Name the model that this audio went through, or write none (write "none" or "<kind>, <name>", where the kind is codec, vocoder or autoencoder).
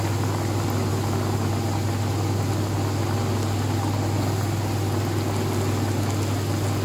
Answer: none